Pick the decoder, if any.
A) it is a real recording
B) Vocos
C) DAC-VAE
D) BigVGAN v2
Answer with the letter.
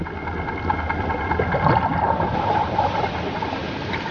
A